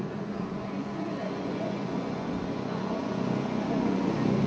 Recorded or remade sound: remade